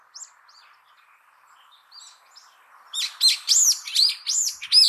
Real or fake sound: real